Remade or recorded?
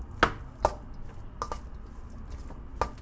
recorded